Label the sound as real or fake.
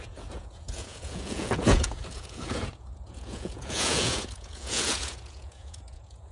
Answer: fake